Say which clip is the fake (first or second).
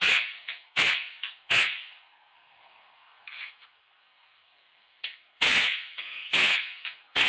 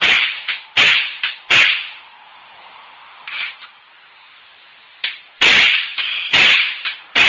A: first